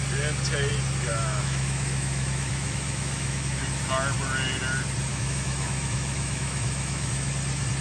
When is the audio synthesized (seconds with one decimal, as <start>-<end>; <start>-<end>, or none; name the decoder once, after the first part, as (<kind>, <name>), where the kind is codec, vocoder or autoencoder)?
1.1-3.6 (autoencoder, DAC-VAE); 5.1-7.3